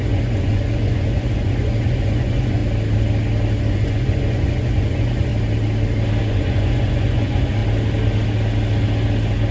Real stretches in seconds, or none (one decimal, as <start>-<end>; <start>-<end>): 2.6-3.7; 5.3-6.2; 7.6-9.5